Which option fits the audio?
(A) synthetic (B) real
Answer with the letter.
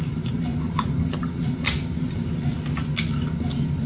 A